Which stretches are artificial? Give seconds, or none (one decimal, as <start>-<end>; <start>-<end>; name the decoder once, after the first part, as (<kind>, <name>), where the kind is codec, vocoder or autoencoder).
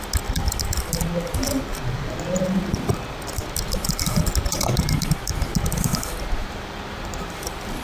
1.7-2.4 (vocoder, BigVGAN v2); 4.5-5.4; 6.4-7.8